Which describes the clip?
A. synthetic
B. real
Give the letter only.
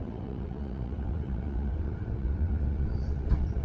A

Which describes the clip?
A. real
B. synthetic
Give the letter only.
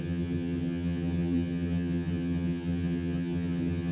B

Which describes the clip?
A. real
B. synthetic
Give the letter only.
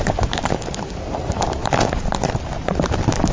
B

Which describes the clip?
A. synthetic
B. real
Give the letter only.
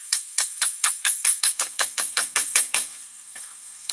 A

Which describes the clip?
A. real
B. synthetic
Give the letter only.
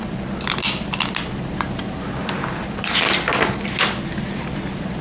A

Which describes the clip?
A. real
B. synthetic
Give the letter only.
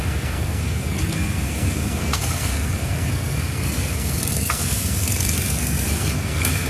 B